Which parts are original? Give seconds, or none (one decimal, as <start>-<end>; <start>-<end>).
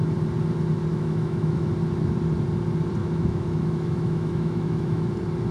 0.0-0.9; 1.7-3.0; 5.1-5.5